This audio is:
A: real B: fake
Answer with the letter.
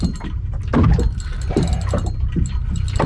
A